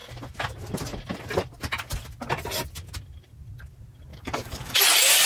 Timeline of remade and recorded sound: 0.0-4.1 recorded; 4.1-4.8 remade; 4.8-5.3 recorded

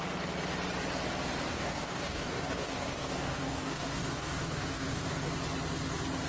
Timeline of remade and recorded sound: 0.0-1.5 recorded; 1.5-5.3 remade; 5.3-6.3 recorded

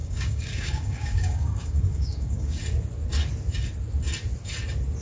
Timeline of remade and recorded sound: 0.0-2.6 remade; 2.6-5.0 recorded

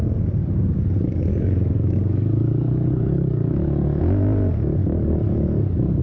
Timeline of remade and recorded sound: 0.0-0.4 recorded; 0.4-4.0 remade; 4.0-4.8 recorded; 4.8-6.0 remade

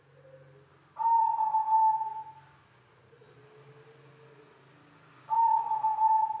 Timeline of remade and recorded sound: 0.0-4.8 recorded; 4.8-5.6 remade; 5.6-6.4 recorded

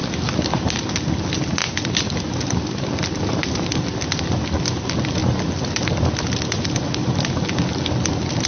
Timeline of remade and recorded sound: 0.0-8.5 recorded